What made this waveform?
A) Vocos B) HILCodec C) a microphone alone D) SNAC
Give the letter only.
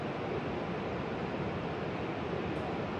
C